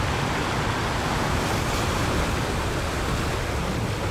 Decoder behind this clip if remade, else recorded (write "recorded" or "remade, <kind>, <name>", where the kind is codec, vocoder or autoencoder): recorded